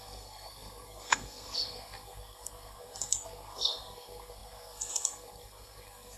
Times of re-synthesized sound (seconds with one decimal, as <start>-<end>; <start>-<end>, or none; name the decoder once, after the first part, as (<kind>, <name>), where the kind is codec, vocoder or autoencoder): 0.0-6.2 (codec, SNAC)